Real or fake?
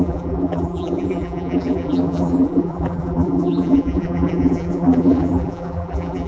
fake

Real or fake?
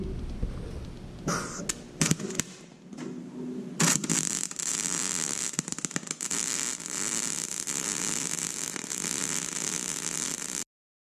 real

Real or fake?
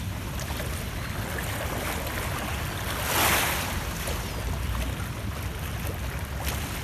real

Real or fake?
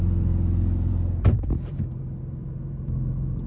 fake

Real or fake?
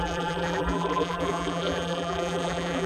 fake